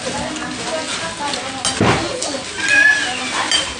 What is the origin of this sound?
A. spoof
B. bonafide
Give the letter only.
B